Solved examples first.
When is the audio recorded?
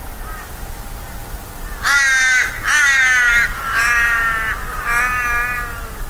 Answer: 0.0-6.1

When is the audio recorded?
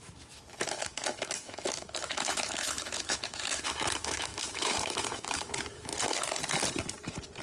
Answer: 5.9-7.4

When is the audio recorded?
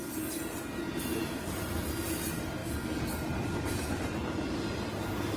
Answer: 0.0-1.1; 1.7-5.4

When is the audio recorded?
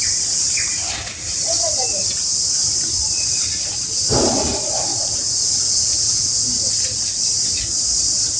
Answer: 0.0-4.9; 6.7-8.4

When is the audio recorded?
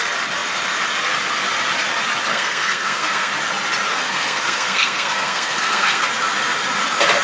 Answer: 0.0-2.3; 3.3-3.9; 6.0-7.2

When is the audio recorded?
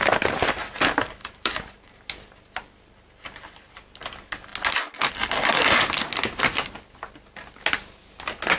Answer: 0.0-1.2; 2.1-8.6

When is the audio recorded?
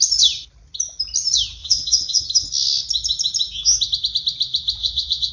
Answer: 0.0-1.6; 2.2-4.8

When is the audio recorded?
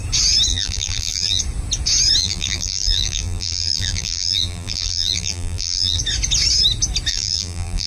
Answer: 0.0-0.5; 1.4-2.2; 6.0-7.1